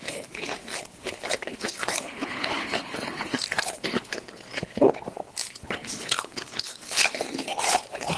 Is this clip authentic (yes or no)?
no